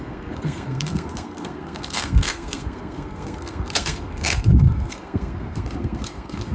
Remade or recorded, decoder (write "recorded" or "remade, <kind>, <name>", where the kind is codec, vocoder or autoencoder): remade, codec, SNAC